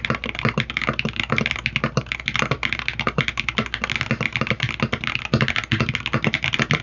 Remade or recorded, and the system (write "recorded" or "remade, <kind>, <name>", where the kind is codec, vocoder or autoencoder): recorded